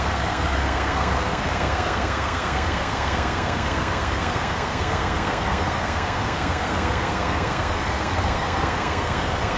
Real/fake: fake